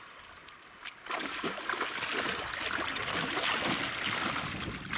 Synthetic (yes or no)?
no